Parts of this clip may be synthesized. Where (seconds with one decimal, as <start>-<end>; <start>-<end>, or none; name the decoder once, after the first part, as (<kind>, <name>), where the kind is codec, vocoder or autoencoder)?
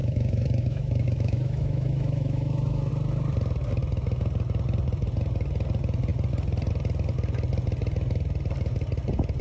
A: 0.0-2.9 (autoencoder, DAC-VAE)